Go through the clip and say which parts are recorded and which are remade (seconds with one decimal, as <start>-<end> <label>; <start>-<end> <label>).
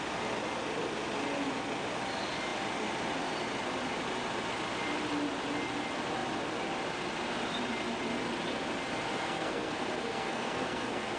0.0-9.1 recorded; 9.1-11.2 remade